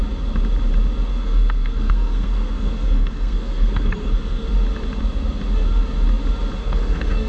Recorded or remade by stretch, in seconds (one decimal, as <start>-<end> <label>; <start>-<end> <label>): 0.0-1.1 recorded; 1.1-4.5 remade; 4.5-6.6 recorded; 6.6-7.3 remade